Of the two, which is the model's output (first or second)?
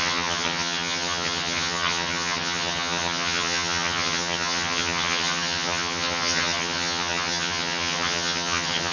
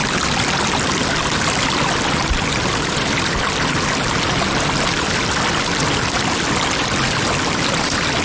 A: first